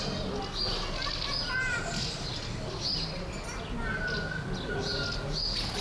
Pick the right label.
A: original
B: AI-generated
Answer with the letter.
A